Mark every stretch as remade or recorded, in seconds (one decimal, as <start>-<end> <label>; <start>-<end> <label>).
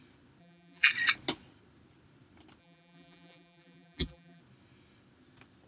0.0-0.4 recorded; 0.4-0.9 remade; 0.9-2.6 recorded; 2.6-4.4 remade; 4.4-5.7 recorded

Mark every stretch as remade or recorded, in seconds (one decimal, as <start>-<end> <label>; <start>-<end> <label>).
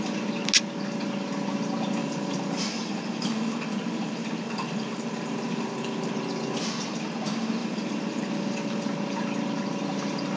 0.0-2.0 recorded; 2.0-6.1 remade; 6.1-7.6 recorded; 7.6-8.3 remade; 8.3-10.4 recorded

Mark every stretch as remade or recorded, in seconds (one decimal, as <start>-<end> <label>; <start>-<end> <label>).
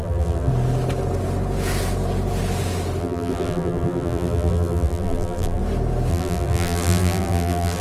0.0-0.5 remade; 0.5-3.0 recorded; 3.0-5.6 remade; 5.6-6.1 recorded; 6.1-7.8 remade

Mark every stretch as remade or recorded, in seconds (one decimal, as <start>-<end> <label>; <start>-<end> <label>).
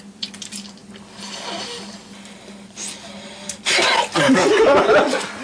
0.0-0.8 recorded; 0.8-4.0 remade; 4.0-5.4 recorded